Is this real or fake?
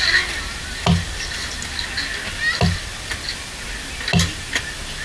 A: real